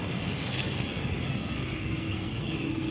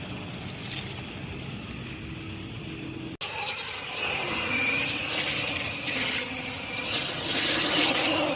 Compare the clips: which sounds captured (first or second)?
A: second